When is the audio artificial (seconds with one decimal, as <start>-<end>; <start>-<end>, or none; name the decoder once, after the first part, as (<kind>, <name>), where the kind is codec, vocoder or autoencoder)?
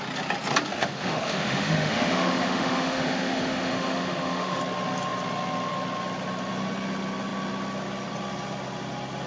0.7-4.6 (autoencoder, DAC-VAE)